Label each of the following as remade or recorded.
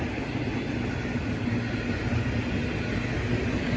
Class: recorded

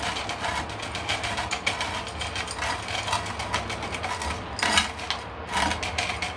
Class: recorded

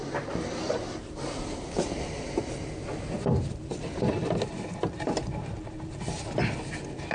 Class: recorded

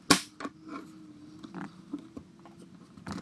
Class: recorded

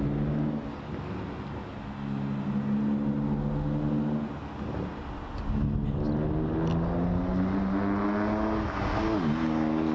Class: recorded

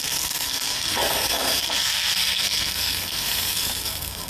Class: remade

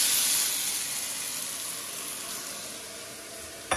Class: recorded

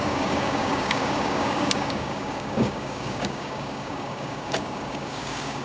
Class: remade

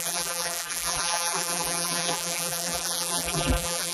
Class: remade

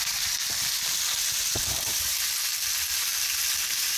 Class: recorded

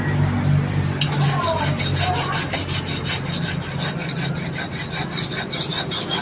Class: recorded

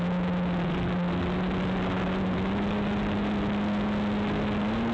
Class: recorded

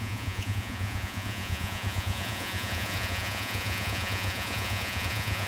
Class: remade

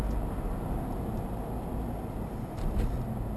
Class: recorded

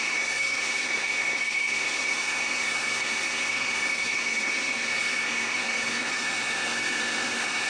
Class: remade